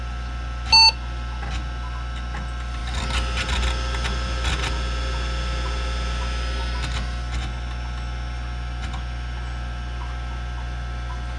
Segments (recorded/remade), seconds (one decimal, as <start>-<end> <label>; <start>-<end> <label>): 0.0-11.4 recorded

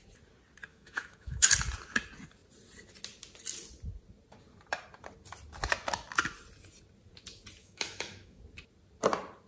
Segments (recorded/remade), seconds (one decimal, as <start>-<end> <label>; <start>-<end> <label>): 0.0-0.7 recorded; 0.7-1.5 remade; 1.5-7.6 recorded; 7.6-8.4 remade; 8.4-9.5 recorded

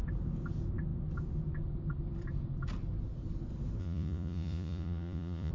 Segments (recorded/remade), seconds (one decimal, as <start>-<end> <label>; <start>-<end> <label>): 0.0-3.8 recorded; 3.8-5.5 remade

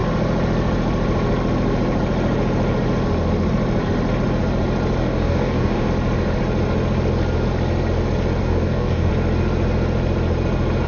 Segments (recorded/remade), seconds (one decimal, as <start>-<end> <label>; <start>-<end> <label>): 0.0-5.0 recorded; 5.0-5.9 remade; 5.9-8.4 recorded; 8.4-9.1 remade; 9.1-10.9 recorded

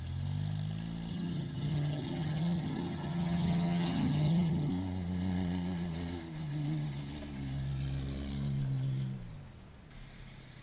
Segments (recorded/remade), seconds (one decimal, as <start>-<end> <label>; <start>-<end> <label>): 0.0-1.1 recorded; 1.1-4.7 remade; 4.7-10.6 recorded